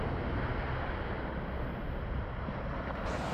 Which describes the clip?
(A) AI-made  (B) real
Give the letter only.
B